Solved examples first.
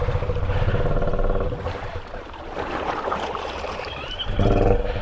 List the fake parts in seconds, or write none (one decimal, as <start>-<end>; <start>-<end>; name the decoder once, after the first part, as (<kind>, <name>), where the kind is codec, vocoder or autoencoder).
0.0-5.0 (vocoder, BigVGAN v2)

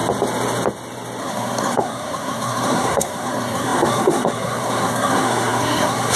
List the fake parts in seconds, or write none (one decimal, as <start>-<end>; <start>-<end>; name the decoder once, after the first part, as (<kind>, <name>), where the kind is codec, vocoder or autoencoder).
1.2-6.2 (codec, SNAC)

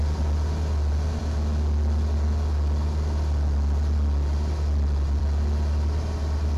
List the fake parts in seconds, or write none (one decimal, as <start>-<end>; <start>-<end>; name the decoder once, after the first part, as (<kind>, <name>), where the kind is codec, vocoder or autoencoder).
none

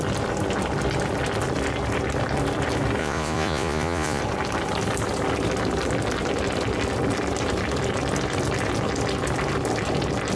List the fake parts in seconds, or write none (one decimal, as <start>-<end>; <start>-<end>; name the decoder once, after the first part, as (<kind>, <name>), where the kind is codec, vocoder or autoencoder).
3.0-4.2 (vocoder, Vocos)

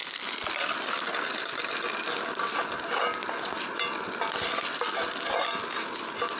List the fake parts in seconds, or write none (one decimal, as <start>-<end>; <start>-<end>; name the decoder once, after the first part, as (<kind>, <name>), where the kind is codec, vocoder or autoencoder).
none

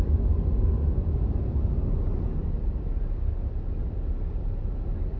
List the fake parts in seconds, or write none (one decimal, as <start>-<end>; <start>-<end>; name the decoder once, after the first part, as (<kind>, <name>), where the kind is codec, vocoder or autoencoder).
none

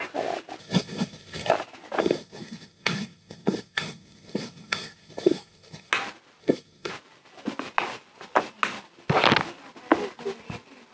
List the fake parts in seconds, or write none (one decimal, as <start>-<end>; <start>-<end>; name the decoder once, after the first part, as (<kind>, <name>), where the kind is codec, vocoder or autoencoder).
0.6-1.5 (codec, SNAC); 2.0-5.9; 6.4-6.9

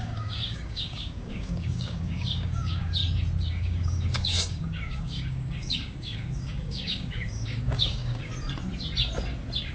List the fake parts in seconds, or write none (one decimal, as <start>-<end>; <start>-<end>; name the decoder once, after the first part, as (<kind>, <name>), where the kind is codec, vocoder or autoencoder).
0.0-3.0 (codec, DAC); 3.5-8.3